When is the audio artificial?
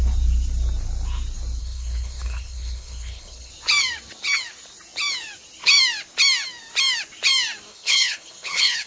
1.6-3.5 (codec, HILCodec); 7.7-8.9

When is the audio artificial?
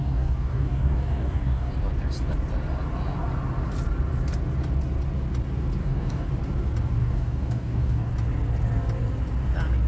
0.0-1.7 (codec, DAC); 5.8-6.3; 7.0-8.1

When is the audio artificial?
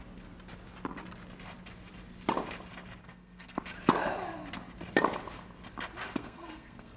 3.0-3.6 (codec, SNAC); 6.2-7.0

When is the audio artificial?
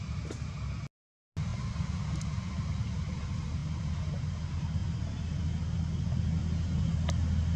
1.5-2.0 (vocoder, BigVGAN v2)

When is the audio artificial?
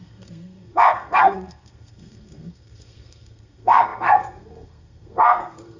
0.0-5.8 (codec, SNAC)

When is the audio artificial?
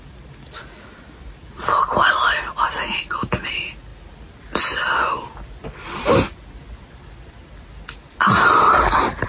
none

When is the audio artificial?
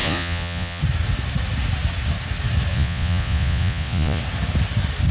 0.0-0.8 (vocoder, Vocos); 2.7-4.2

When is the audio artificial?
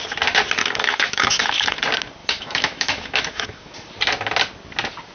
0.6-1.8 (autoencoder, DAC-VAE); 2.2-3.7